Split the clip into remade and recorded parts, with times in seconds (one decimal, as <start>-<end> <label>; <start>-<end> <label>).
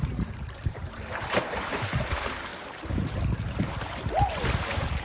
0.0-2.5 remade; 2.5-4.6 recorded; 4.6-5.0 remade